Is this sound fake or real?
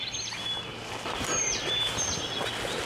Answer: real